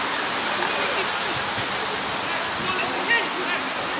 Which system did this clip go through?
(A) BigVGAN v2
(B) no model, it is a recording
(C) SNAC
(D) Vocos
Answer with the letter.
B